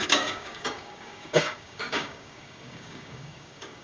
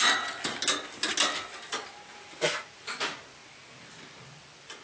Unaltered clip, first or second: second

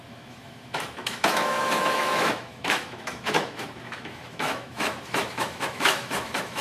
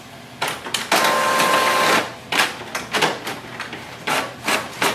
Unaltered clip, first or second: second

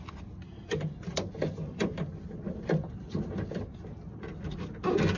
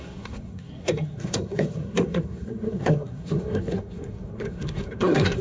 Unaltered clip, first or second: first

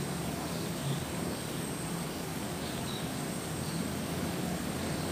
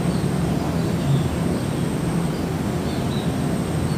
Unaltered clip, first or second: second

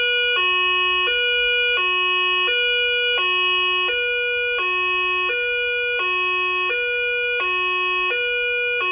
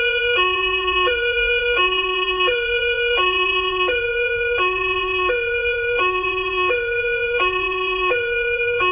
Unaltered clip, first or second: first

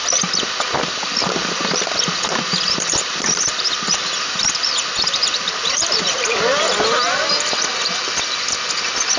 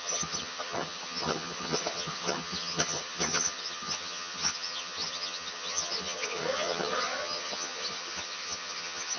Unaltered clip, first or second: first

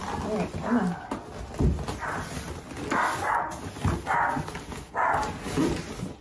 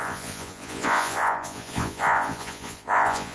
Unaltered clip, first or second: first